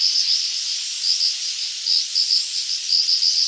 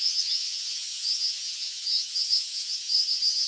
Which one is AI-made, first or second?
second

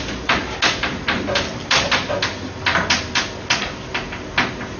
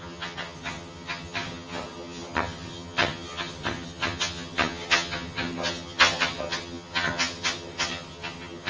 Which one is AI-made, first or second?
second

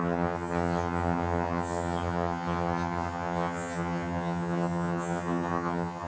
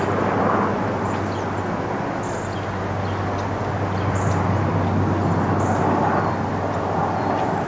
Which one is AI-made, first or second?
first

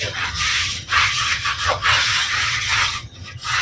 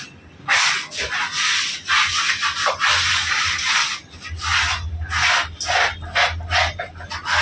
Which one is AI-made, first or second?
first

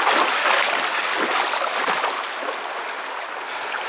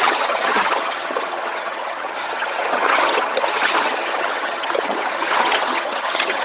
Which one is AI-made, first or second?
second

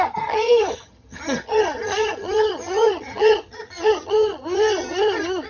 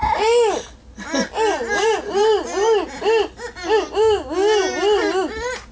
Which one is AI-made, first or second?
first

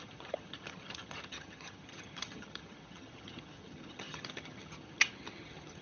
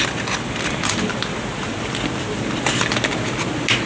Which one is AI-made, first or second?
first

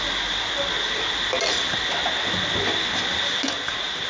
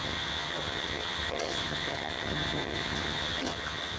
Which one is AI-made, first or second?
second